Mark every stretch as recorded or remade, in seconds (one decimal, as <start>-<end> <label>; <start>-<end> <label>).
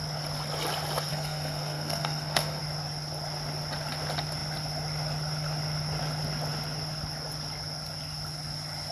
0.0-1.1 recorded; 1.1-2.6 remade; 2.6-8.9 recorded